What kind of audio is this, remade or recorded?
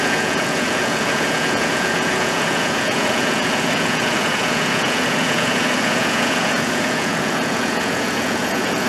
remade